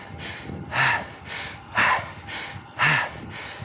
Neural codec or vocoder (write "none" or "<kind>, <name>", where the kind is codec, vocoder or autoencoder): none